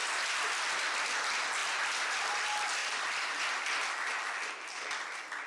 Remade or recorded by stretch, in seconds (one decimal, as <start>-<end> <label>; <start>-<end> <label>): 0.0-2.8 recorded; 2.8-3.4 remade; 3.4-5.5 recorded

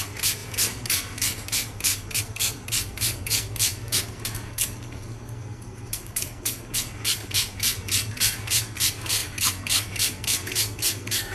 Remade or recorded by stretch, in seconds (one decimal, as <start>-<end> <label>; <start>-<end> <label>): 0.0-11.3 remade

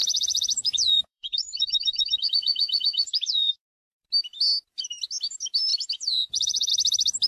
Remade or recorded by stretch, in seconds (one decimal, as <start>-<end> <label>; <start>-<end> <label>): 0.0-3.5 remade; 3.5-5.7 recorded; 5.7-6.7 remade; 6.7-7.3 recorded